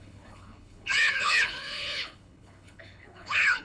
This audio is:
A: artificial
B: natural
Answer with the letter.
A